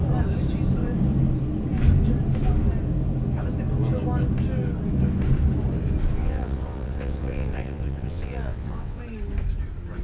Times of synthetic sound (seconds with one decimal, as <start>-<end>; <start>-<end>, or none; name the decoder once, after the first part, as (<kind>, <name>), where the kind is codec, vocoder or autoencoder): 6.2-9.0 (vocoder, WaveNeXt)